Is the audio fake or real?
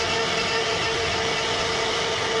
real